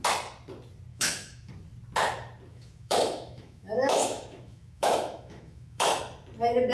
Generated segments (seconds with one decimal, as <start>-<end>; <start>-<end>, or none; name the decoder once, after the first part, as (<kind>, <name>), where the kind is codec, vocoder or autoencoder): 0.9-1.5 (autoencoder, DAC-VAE); 2.5-6.0